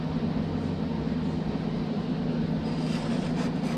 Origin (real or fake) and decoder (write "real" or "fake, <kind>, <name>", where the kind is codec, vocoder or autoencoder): real